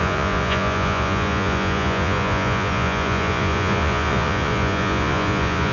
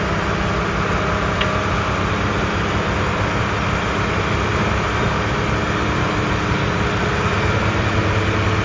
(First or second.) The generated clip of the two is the first